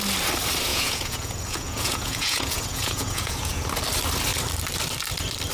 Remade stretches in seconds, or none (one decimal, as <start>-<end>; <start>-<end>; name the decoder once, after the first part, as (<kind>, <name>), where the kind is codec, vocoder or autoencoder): 0.7-3.7 (vocoder, Vocos)